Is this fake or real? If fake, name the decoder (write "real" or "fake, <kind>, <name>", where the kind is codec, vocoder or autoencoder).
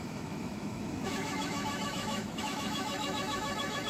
fake, autoencoder, DAC-VAE